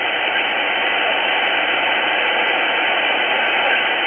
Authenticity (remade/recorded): recorded